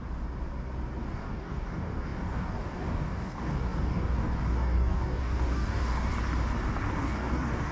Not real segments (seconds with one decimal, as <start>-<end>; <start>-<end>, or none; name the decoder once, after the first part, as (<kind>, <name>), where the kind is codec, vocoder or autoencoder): 1.0-6.1 (codec, DAC); 7.0-7.7